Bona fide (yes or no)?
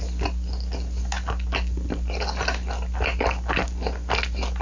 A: yes